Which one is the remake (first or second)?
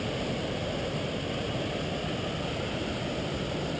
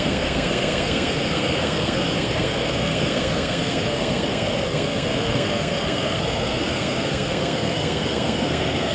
second